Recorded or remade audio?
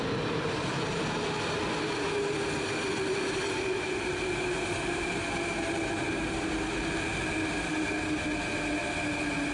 recorded